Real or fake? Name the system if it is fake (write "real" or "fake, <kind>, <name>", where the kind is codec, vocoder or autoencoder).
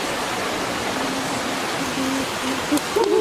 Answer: real